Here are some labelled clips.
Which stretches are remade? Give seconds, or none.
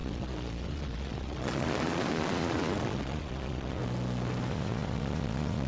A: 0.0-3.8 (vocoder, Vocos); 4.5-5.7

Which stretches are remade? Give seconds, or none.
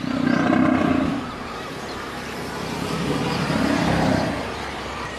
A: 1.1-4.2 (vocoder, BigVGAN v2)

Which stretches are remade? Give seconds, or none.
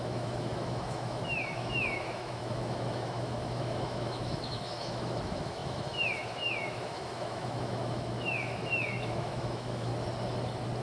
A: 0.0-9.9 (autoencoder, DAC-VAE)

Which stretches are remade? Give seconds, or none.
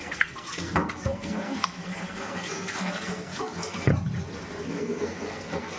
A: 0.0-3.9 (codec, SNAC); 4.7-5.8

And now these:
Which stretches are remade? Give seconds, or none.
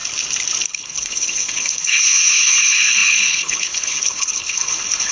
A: 0.7-5.1 (codec, HILCodec)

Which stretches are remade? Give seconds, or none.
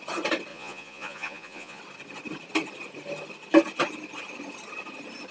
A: 0.5-1.8 (vocoder, Vocos)